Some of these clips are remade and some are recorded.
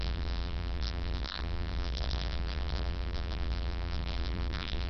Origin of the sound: remade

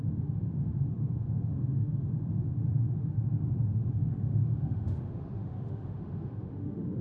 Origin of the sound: remade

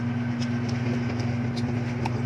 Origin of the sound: recorded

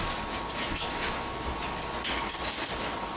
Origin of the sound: recorded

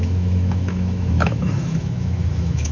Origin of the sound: remade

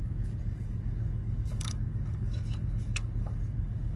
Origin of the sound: remade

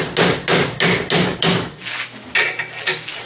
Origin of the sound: recorded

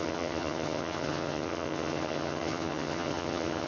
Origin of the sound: remade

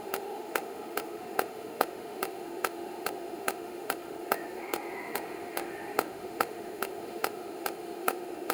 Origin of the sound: remade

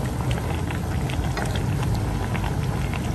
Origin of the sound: recorded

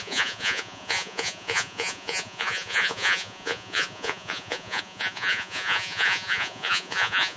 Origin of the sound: remade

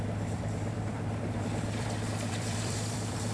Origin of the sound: remade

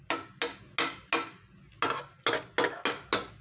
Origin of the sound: recorded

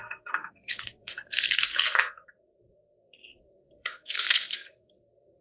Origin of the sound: remade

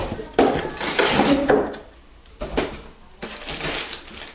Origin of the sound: recorded